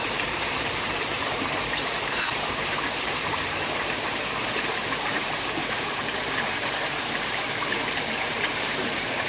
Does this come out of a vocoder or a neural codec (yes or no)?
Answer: yes